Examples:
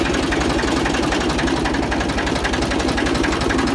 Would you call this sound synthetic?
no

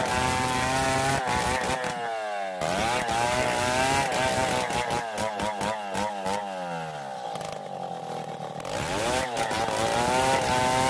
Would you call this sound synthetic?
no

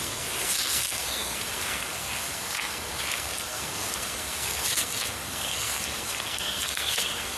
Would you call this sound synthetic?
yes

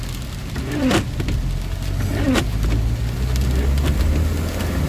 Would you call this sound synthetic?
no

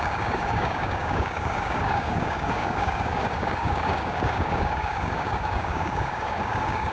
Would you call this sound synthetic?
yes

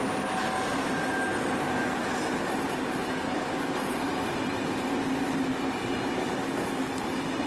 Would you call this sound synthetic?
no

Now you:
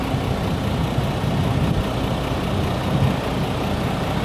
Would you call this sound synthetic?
no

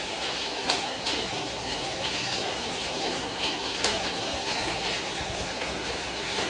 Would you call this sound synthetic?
yes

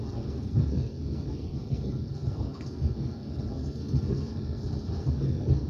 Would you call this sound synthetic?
yes